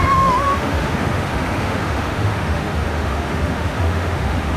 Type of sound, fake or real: fake